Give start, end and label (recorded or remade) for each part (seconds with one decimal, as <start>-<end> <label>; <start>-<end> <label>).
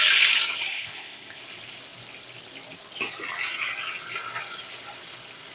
0.0-0.7 recorded; 0.7-1.4 remade; 1.4-5.5 recorded